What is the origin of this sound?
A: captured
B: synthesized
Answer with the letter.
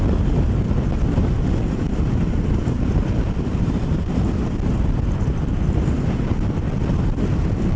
A